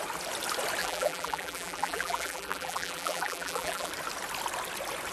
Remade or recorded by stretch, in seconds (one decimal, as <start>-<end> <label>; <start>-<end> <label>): 0.0-0.8 recorded; 0.8-3.9 remade; 3.9-5.1 recorded

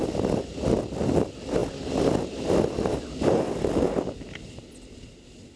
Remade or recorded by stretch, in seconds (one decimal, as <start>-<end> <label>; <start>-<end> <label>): 0.0-5.6 recorded

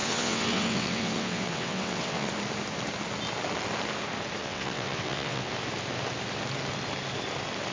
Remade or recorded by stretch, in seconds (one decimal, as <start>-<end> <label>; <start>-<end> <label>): 0.0-2.3 remade; 2.3-4.4 recorded; 4.4-5.5 remade; 5.5-7.7 recorded

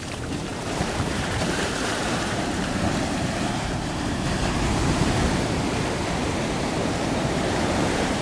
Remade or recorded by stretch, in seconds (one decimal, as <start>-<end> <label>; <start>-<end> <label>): 0.0-8.2 remade

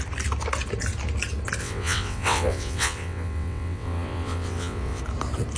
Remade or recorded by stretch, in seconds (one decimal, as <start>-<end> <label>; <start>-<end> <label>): 0.0-1.6 recorded; 1.6-5.0 remade; 5.0-5.6 recorded

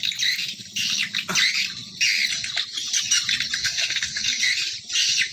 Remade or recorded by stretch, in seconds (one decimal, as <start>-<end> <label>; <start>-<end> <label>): 0.0-3.6 recorded; 3.6-4.5 remade; 4.5-5.3 recorded

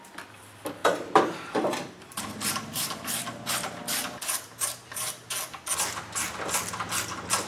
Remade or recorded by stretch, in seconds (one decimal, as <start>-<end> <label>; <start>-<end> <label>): 0.0-0.8 recorded; 0.8-5.3 remade; 5.3-7.5 recorded